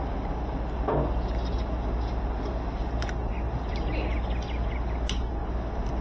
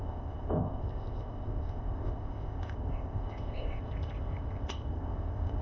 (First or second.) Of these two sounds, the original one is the first